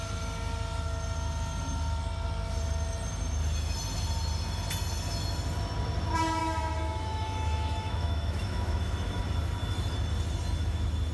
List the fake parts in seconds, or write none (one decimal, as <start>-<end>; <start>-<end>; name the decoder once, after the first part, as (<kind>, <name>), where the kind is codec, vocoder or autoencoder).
6.4-9.2 (autoencoder, DAC-VAE)